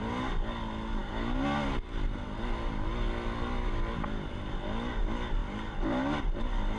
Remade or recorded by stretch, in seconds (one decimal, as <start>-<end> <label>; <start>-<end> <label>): 0.0-6.8 recorded